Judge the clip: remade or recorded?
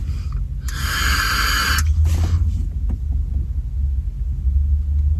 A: recorded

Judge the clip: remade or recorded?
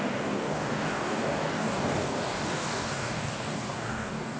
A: remade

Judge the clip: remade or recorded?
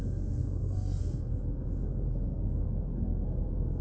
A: remade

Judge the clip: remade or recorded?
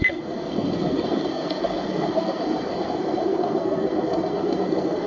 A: remade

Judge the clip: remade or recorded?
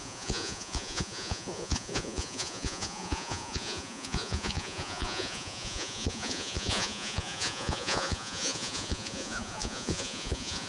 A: remade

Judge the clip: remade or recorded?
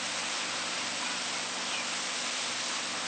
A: recorded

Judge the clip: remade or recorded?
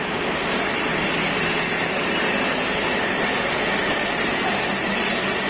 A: recorded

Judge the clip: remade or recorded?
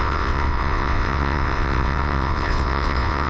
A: remade